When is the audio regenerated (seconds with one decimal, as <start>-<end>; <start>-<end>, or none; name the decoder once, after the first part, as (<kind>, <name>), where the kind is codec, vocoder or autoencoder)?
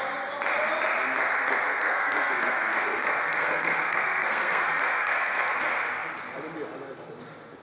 1.7-5.5 (codec, SNAC)